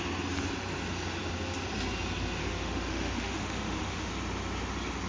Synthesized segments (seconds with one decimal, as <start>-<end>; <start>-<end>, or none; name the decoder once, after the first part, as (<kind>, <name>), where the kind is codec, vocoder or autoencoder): 2.4-4.1 (autoencoder, DAC-VAE)